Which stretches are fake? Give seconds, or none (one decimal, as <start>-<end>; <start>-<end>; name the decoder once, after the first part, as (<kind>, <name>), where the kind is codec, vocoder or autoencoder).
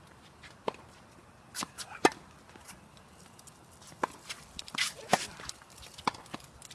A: none